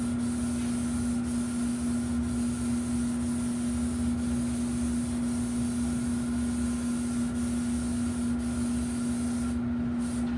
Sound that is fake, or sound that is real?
real